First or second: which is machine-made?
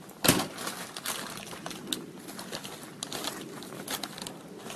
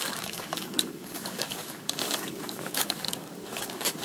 second